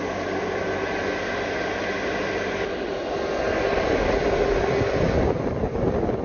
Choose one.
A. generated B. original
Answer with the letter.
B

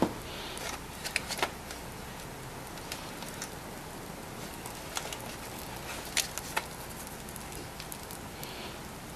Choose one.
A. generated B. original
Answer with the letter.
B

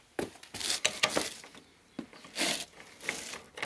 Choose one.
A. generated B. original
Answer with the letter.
B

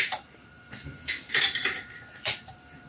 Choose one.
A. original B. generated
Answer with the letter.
B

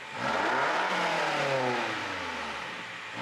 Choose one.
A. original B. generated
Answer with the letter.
A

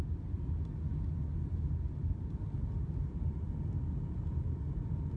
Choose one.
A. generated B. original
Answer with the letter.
B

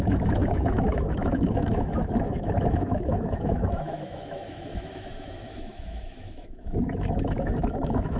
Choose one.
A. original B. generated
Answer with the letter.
B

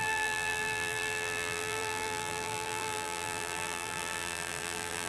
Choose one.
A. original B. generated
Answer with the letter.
B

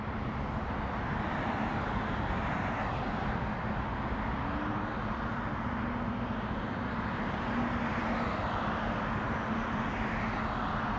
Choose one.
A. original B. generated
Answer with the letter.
A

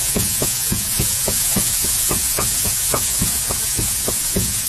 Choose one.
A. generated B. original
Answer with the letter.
A